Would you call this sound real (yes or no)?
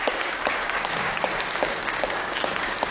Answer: no